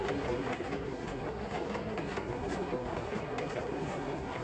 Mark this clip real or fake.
fake